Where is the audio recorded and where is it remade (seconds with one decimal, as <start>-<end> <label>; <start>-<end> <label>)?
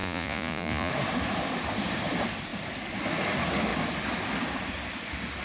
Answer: 0.0-0.9 remade; 0.9-5.4 recorded